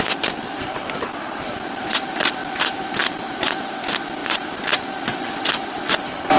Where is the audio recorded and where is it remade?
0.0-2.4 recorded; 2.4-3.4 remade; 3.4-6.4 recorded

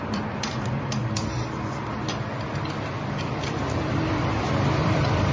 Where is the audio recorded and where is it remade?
0.0-1.0 remade; 1.0-3.3 recorded; 3.3-5.3 remade

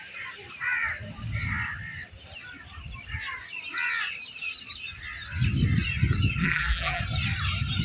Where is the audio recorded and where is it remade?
0.0-6.4 recorded; 6.4-7.0 remade; 7.0-7.8 recorded